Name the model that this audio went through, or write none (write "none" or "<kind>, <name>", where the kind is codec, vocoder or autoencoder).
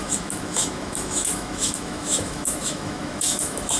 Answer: autoencoder, DAC-VAE